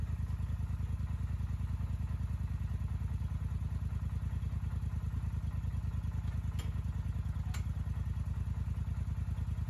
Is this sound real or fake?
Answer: real